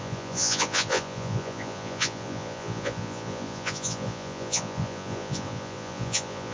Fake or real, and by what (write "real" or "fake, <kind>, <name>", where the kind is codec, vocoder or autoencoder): fake, vocoder, Vocos